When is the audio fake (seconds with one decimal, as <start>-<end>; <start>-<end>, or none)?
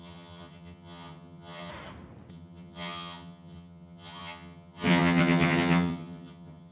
0.0-1.7; 2.3-6.7